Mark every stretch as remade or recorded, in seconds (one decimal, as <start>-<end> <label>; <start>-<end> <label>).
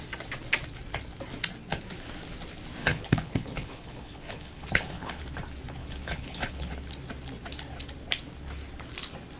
0.0-2.8 recorded; 2.8-5.2 remade; 5.2-5.8 recorded; 5.8-6.7 remade; 6.7-9.4 recorded